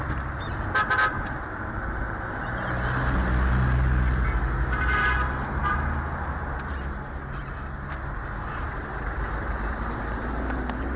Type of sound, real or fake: real